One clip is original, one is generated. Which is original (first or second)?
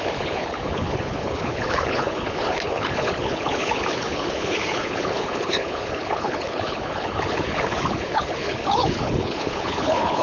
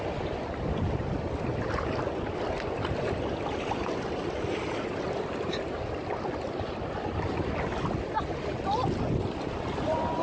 second